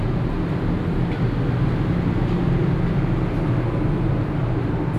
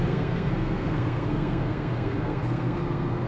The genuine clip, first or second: first